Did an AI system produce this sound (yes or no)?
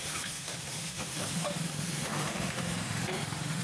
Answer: yes